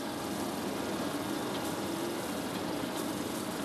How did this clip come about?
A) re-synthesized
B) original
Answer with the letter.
B